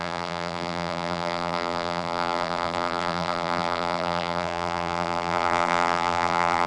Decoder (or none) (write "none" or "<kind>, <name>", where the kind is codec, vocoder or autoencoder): vocoder, BigVGAN v2